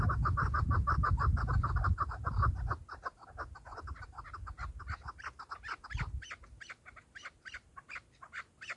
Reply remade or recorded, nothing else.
recorded